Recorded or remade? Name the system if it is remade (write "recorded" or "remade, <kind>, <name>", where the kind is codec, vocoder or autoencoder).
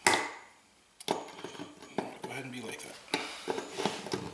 recorded